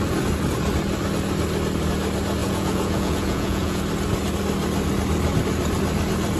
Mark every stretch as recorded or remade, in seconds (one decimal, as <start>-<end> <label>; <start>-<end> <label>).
0.0-2.4 recorded; 2.4-3.8 remade; 3.8-6.4 recorded